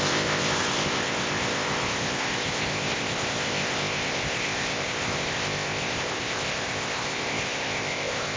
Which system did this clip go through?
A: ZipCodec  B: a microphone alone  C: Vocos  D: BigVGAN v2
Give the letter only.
A